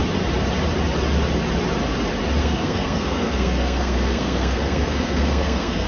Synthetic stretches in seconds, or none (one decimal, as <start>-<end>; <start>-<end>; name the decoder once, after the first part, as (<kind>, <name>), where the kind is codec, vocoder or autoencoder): 2.4-5.9 (codec, SNAC)